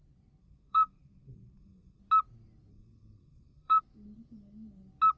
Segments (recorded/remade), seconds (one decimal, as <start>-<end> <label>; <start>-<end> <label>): 0.0-0.4 recorded; 0.4-2.0 remade; 2.0-2.7 recorded; 2.7-3.8 remade; 3.8-5.2 recorded